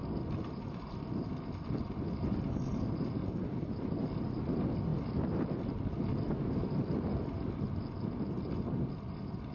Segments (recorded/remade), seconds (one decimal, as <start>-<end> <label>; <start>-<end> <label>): 0.0-9.5 recorded